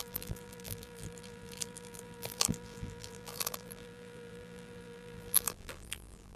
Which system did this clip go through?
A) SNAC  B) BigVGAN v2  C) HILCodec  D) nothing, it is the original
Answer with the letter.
B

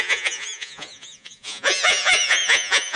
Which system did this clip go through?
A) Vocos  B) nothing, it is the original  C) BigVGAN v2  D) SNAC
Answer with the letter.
A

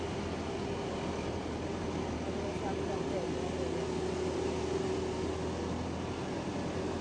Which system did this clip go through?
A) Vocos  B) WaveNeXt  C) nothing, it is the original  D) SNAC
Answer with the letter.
C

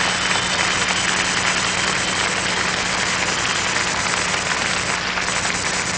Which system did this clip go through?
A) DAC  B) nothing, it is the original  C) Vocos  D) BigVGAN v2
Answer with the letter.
B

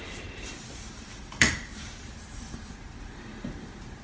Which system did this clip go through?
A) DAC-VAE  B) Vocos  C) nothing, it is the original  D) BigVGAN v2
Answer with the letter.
D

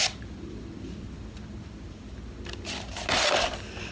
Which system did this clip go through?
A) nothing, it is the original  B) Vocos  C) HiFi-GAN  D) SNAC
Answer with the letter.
A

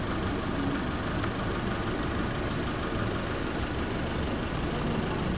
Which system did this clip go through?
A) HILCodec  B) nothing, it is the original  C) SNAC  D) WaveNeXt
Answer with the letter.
B